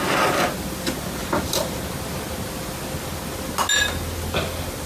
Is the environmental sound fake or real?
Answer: real